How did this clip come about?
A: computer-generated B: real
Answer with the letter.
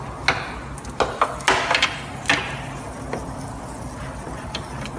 B